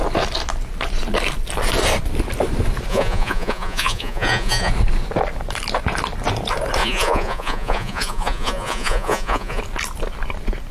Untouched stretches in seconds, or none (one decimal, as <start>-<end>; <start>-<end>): 0.0-2.9; 4.7-6.8; 9.6-10.7